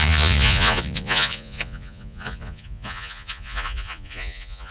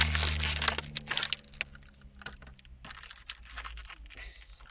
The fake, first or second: first